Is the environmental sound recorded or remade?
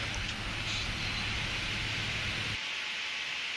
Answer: recorded